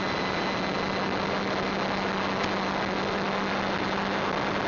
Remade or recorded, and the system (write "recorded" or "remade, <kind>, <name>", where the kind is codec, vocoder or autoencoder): recorded